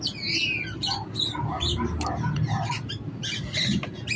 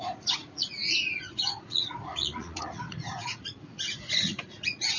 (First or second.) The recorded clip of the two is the first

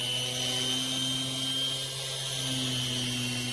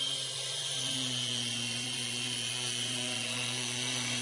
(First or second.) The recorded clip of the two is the first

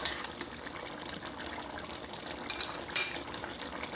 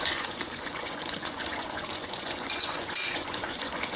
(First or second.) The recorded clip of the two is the first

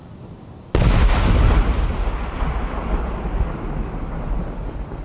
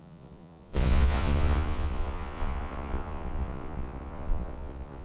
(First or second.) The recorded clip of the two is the first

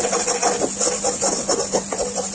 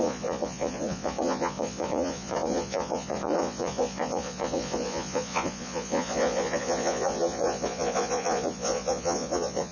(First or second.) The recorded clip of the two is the first